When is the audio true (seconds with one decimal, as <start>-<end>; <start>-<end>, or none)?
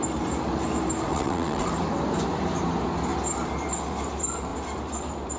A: 0.0-1.1; 1.7-5.4